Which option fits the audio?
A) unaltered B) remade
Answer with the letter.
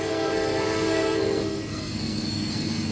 B